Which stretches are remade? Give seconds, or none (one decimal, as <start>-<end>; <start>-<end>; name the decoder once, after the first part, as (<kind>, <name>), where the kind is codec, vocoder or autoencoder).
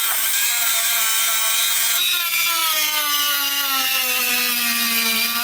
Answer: 0.0-1.0 (vocoder, BigVGAN v2)